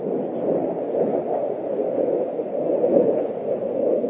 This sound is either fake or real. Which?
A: real